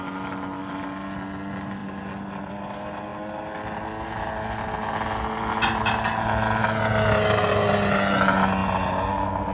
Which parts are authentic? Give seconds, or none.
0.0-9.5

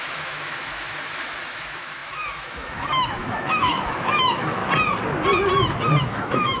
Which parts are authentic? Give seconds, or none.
4.6-6.0